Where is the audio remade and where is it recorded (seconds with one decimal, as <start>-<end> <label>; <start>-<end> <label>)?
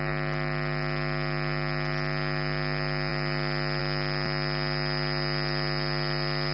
0.0-6.5 recorded